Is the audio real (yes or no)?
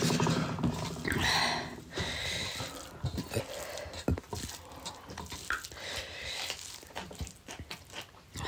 yes